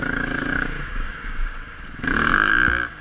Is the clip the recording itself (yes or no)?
no